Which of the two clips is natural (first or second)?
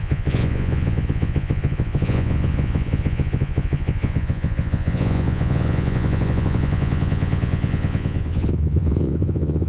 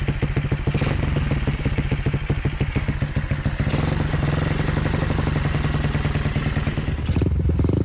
second